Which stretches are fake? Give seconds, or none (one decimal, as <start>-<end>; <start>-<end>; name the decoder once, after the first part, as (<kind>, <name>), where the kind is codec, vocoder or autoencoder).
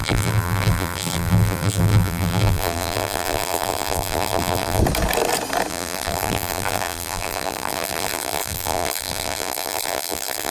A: 0.0-4.8 (vocoder, BigVGAN v2); 5.7-10.5